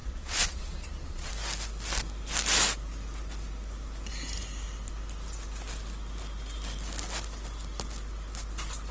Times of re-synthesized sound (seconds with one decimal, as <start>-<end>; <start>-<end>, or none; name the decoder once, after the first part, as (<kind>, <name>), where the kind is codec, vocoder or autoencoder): 0.0-1.3 (vocoder, Vocos)